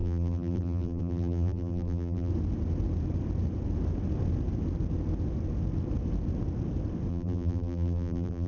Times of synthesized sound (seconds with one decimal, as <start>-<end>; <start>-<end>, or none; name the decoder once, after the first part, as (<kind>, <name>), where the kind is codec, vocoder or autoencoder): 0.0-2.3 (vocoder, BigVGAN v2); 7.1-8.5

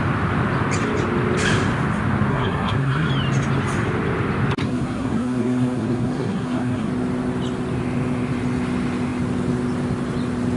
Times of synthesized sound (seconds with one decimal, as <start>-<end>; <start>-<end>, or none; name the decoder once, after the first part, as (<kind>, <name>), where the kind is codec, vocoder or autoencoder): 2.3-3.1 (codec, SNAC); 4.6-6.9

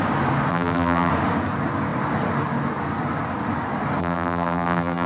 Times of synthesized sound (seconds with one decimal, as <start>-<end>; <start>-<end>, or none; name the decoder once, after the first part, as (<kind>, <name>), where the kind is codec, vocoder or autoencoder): 0.5-1.1 (vocoder, BigVGAN v2); 4.0-5.1

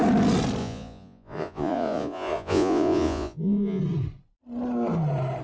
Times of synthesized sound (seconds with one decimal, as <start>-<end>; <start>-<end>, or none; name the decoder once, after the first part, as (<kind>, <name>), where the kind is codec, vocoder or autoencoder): 0.6-3.8 (vocoder, Vocos)

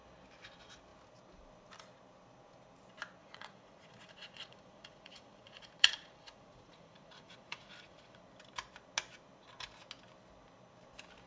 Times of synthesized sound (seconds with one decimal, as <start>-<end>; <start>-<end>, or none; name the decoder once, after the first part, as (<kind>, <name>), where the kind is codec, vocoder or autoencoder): 3.2-8.2 (vocoder, Vocos)